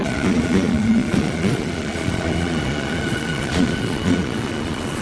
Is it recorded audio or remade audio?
remade